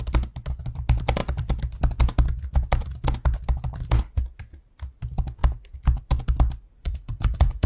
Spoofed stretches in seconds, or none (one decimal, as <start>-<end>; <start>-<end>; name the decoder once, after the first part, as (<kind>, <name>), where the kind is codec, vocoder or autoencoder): 6.8-7.7 (vocoder, Vocos)